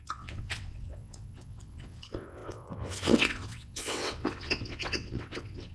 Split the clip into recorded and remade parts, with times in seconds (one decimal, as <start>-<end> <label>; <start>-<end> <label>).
0.0-5.7 remade